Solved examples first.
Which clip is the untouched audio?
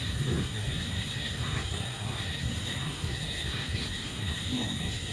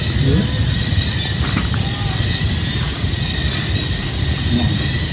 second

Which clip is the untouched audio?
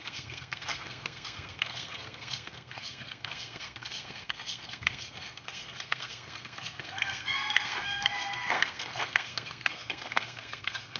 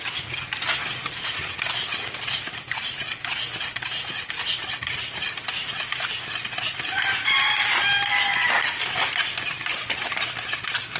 second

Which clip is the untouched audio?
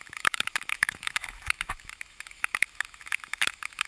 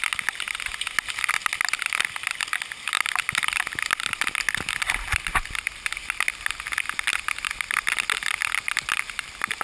second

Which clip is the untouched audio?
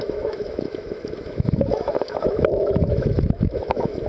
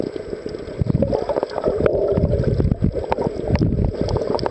second